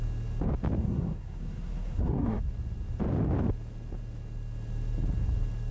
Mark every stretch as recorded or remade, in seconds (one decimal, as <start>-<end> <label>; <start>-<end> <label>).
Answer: 0.0-0.8 recorded; 0.8-2.4 remade; 2.4-5.7 recorded